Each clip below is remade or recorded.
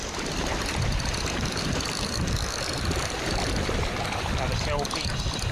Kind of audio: recorded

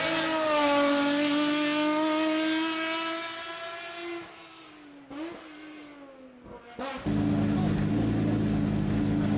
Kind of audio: recorded